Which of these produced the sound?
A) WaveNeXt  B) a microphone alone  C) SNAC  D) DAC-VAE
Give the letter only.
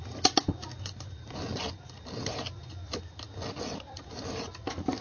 B